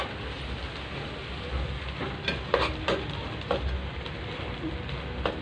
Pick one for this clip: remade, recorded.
recorded